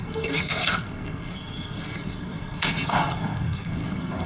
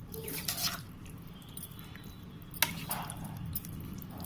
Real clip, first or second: second